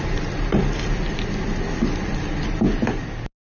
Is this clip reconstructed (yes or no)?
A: no